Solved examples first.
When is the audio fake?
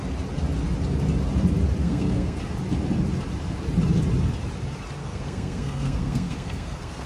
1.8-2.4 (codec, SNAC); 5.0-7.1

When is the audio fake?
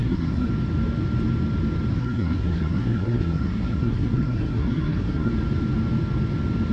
0.0-0.5 (codec, SNAC); 1.9-5.3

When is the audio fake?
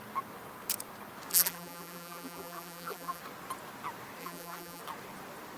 1.3-3.2 (vocoder, BigVGAN v2); 4.2-4.8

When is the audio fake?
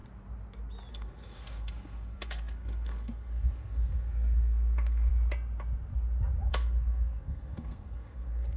0.9-5.1 (codec, SNAC); 6.5-8.6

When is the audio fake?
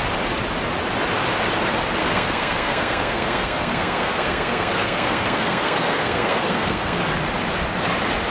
2.0-7.0 (codec, SNAC)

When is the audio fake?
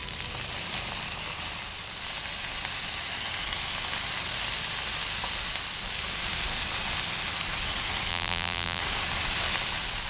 8.1-8.8 (vocoder, BigVGAN v2)